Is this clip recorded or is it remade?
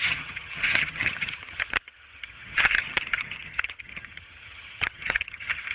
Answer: remade